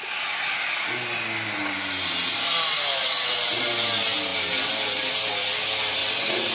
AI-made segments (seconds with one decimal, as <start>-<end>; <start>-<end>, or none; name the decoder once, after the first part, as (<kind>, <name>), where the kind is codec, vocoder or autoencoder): 3.0-3.6 (vocoder, WaveNeXt); 6.0-6.5